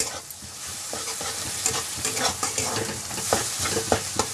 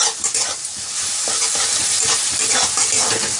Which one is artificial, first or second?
first